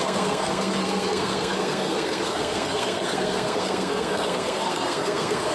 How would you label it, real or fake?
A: fake